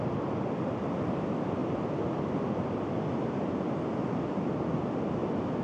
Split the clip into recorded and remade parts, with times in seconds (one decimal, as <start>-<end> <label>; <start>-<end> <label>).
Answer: 0.0-5.6 recorded